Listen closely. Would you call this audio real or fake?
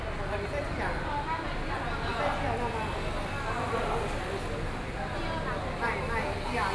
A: real